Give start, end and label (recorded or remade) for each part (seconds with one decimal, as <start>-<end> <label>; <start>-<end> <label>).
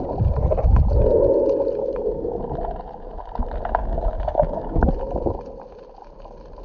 0.0-1.8 recorded; 1.8-2.4 remade; 2.4-3.8 recorded; 3.8-4.9 remade; 4.9-6.6 recorded